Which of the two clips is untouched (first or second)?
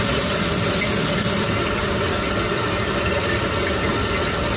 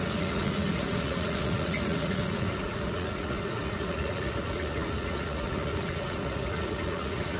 first